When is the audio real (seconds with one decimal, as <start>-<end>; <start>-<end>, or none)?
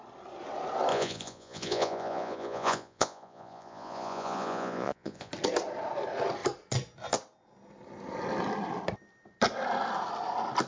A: 0.0-0.9; 5.3-10.7